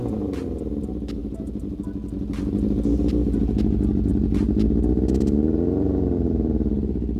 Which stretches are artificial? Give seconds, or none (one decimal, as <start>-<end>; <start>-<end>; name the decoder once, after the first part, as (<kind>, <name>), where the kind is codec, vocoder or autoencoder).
1.2-1.8 (vocoder, BigVGAN v2)